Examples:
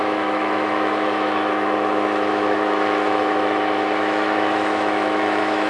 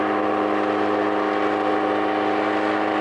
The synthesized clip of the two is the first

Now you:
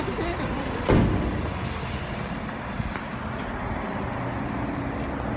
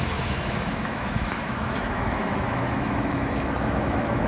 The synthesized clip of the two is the second